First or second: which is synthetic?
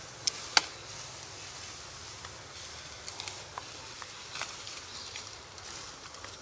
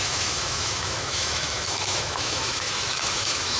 second